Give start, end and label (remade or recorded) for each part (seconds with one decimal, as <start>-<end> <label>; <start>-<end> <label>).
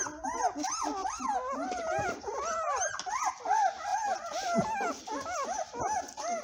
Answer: 0.0-1.0 recorded; 1.0-3.3 remade; 3.3-6.4 recorded